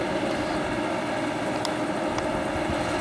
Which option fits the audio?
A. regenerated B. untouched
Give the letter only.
B